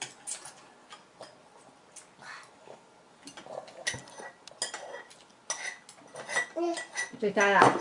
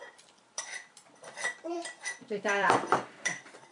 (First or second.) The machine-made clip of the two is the second